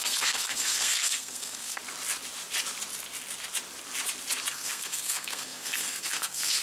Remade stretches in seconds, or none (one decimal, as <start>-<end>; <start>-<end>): 0.0-1.8; 4.5-6.6